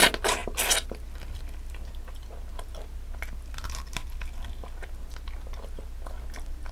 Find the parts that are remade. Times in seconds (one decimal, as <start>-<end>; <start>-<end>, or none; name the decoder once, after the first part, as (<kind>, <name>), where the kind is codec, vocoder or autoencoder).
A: none